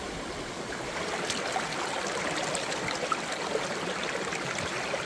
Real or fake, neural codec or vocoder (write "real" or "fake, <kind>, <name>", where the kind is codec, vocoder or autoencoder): real